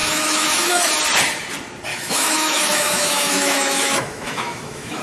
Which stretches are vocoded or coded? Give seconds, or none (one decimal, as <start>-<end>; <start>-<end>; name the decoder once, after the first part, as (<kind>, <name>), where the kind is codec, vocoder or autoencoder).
0.0-0.9 (autoencoder, DAC-VAE); 1.9-5.0